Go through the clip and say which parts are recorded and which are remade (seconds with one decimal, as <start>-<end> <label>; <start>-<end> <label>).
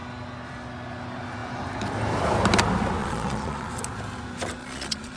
0.0-3.0 recorded; 3.0-3.7 remade; 3.7-4.6 recorded; 4.6-5.2 remade